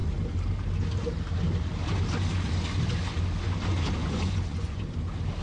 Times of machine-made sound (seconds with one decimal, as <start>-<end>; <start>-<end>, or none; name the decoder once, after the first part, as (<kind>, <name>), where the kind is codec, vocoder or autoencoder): 4.0-4.8 (vocoder, Vocos)